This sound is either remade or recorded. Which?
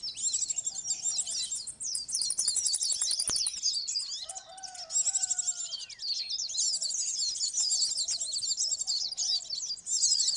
recorded